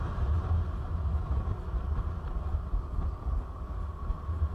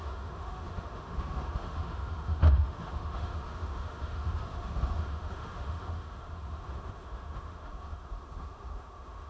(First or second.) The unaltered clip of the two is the first